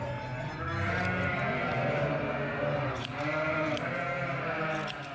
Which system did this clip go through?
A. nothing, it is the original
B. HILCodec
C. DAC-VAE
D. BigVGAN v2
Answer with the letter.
A